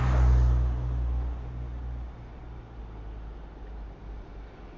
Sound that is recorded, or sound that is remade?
recorded